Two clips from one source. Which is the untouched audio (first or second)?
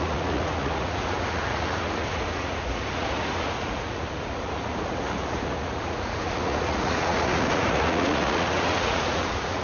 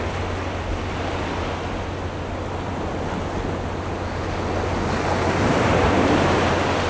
second